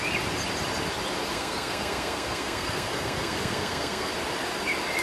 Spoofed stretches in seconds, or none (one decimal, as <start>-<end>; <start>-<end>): 1.3-4.1